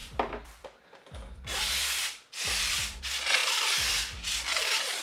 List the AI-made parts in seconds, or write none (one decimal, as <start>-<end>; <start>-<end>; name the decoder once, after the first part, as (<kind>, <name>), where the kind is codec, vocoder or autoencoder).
0.0-3.0 (vocoder, BigVGAN v2); 3.4-5.0